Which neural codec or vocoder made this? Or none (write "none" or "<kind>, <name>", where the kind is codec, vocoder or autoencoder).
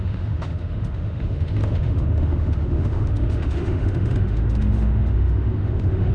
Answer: autoencoder, DAC-VAE